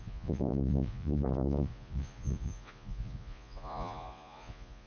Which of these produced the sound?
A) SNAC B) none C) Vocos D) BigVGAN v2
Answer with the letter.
C